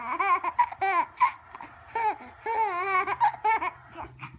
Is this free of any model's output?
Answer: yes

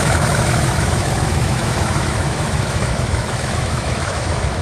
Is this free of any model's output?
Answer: no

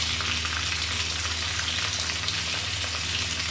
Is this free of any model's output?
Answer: yes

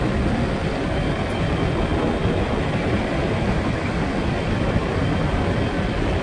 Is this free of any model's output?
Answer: yes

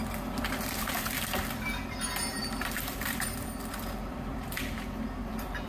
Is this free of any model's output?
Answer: no